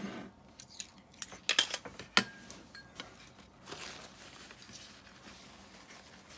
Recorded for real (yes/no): yes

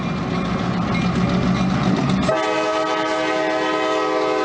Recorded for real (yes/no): yes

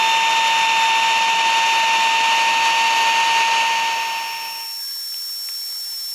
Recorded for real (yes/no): yes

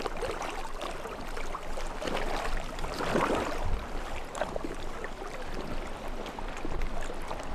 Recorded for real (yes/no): yes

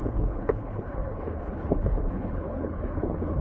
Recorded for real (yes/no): no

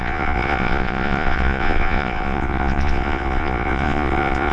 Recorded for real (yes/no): no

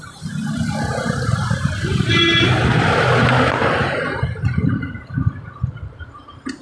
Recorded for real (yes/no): no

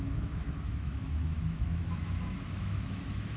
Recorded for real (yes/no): no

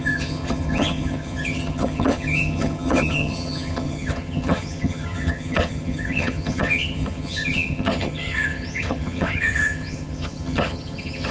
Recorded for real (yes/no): no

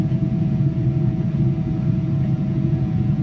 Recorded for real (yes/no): no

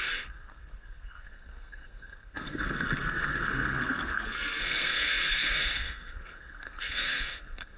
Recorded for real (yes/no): no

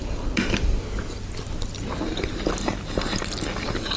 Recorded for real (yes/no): yes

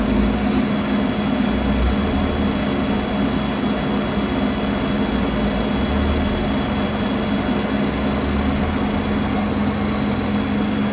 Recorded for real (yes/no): yes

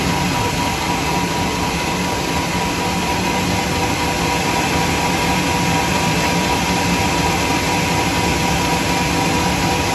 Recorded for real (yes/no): yes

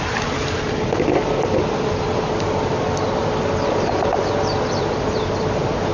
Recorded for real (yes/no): yes